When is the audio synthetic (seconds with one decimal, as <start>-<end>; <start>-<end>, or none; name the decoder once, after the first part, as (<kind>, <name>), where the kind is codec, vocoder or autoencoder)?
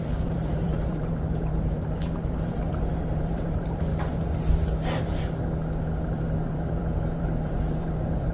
0.0-3.9 (vocoder, BigVGAN v2); 6.5-8.3